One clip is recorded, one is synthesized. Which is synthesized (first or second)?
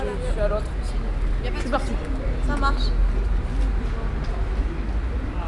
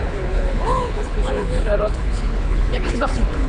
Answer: second